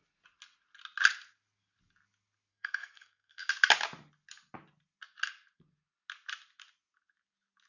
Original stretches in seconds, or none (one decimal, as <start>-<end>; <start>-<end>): 0.0-2.5; 3.5-7.7